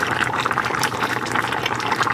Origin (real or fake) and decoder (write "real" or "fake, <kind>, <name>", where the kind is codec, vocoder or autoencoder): fake, vocoder, BigVGAN v2